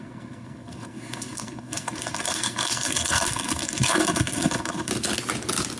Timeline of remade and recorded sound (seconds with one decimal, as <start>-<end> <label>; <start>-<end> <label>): 0.0-4.9 remade; 4.9-5.8 recorded

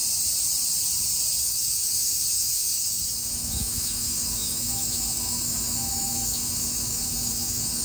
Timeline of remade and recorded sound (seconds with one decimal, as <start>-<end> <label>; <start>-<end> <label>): 0.0-1.4 recorded; 1.4-7.8 remade

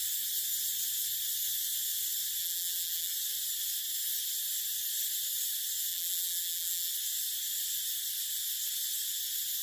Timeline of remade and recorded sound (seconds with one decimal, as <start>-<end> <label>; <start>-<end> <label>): 0.0-2.4 recorded; 2.4-3.1 remade; 3.1-5.9 recorded; 5.9-6.9 remade; 6.9-9.6 recorded

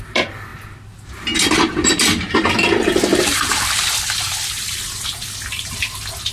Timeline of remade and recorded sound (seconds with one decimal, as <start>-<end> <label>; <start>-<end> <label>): 0.0-3.1 recorded; 3.1-5.7 remade; 5.7-6.3 recorded